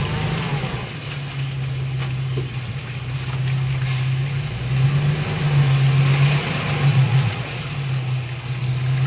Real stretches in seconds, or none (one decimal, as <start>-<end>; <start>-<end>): 0.0-6.9; 7.6-9.1